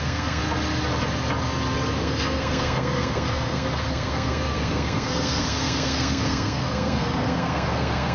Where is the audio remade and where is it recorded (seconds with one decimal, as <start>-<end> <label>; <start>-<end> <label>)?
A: 0.0-0.4 remade; 0.4-2.0 recorded; 2.0-8.1 remade